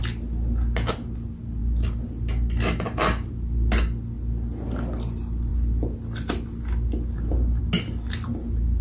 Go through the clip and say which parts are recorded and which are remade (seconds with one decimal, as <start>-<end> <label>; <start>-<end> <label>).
0.0-8.8 recorded